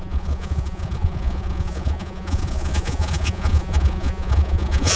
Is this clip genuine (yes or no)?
no